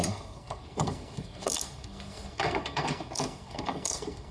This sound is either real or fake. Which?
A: fake